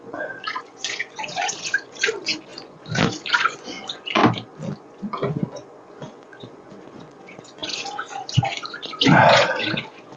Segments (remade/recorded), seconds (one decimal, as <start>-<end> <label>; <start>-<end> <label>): 0.0-4.2 remade; 4.2-4.8 recorded; 4.8-10.2 remade